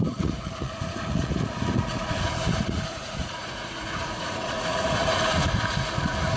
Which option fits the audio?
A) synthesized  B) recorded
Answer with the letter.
A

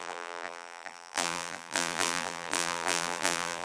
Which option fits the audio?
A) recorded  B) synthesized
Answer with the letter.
B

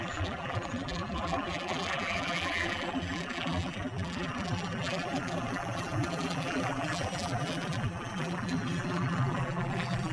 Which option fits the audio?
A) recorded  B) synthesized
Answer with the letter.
B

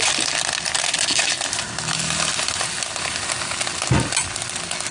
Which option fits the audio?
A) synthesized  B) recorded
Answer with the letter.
B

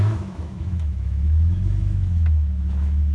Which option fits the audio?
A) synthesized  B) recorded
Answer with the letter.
A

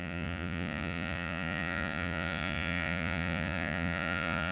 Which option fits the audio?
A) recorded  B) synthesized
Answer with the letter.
B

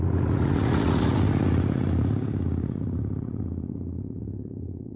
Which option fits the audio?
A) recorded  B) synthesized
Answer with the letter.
B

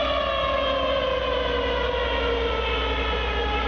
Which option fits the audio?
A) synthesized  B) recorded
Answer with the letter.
B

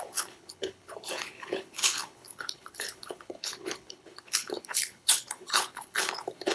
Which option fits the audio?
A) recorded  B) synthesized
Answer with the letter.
B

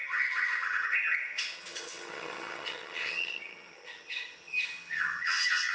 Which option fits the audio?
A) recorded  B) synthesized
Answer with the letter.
B